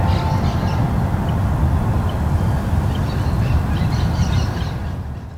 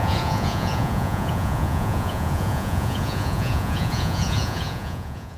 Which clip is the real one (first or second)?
first